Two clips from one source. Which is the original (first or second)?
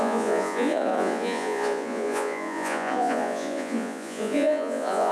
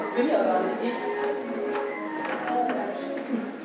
second